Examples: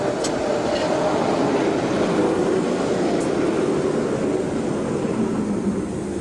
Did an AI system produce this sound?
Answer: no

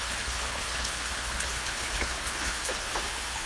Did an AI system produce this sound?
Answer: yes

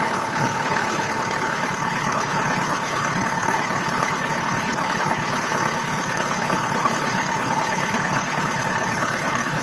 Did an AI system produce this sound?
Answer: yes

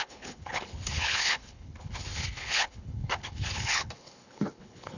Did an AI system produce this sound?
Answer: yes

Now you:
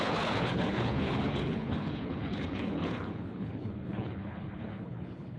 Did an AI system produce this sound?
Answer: yes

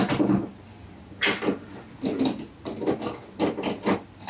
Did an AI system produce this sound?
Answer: no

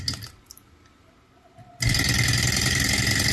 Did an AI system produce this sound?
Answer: no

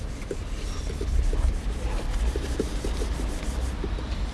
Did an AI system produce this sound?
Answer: no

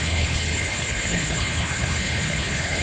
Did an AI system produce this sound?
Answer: yes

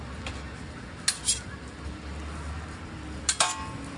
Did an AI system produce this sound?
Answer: no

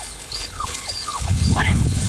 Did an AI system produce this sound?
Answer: yes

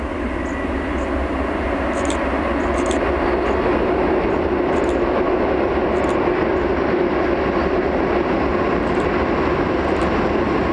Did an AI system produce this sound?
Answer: no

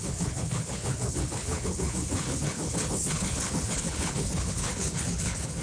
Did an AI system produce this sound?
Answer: yes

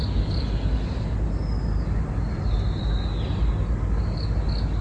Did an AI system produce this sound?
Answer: no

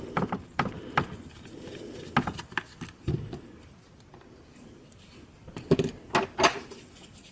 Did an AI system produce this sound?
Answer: no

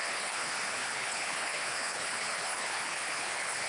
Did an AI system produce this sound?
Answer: yes